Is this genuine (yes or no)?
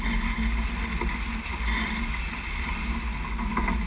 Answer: yes